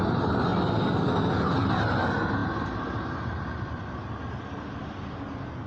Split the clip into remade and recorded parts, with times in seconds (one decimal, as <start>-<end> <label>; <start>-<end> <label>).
0.0-5.7 recorded